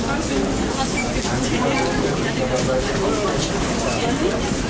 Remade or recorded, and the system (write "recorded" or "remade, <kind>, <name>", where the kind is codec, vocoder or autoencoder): recorded